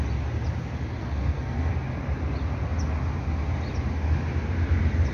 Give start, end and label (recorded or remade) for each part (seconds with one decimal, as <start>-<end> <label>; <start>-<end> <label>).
0.0-1.0 recorded; 1.0-1.7 remade; 1.7-5.1 recorded